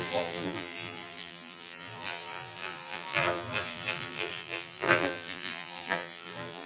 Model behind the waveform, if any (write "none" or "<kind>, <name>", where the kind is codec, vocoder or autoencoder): vocoder, BigVGAN v2